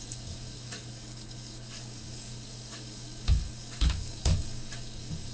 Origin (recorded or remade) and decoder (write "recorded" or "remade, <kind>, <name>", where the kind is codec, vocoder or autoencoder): remade, codec, DAC